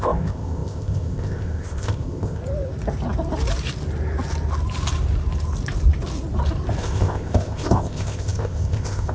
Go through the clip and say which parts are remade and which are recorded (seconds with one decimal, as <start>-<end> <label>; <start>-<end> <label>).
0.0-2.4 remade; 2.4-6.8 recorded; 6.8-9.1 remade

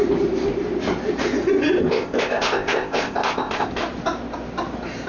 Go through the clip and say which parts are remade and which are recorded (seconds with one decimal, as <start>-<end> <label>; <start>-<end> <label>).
0.0-1.8 recorded; 1.8-3.7 remade; 3.7-5.1 recorded

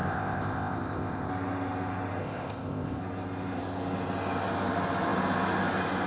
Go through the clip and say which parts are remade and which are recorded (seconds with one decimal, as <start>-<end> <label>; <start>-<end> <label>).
0.0-1.3 remade; 1.3-2.2 recorded; 2.2-3.0 remade; 3.0-6.1 recorded

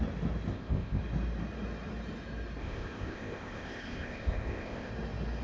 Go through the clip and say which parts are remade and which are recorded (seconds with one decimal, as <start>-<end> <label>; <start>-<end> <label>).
0.0-0.5 recorded; 0.5-1.0 remade; 1.0-2.6 recorded; 2.6-4.9 remade; 4.9-5.4 recorded

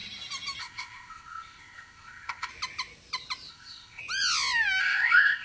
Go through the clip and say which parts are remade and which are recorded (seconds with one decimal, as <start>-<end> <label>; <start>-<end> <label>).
0.0-0.6 recorded; 0.6-2.5 remade; 2.5-3.5 recorded; 3.5-4.0 remade; 4.0-4.8 recorded; 4.8-5.4 remade

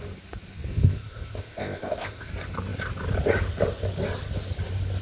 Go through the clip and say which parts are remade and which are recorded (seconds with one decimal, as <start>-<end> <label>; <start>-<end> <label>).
0.0-0.7 recorded; 0.7-2.3 remade; 2.3-5.0 recorded

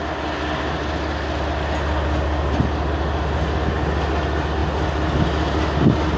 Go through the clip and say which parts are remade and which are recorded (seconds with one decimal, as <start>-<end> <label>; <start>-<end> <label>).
0.0-6.2 recorded

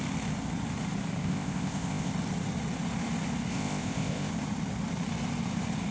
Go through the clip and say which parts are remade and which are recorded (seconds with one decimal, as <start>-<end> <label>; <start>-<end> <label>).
0.0-1.2 recorded; 1.2-2.1 remade; 2.1-3.5 recorded; 3.5-4.3 remade; 4.3-5.9 recorded